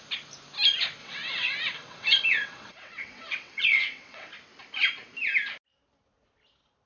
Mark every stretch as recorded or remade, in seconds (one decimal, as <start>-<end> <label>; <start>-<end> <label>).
0.0-1.0 recorded; 1.0-4.3 remade; 4.3-6.9 recorded